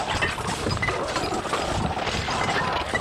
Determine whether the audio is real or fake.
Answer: real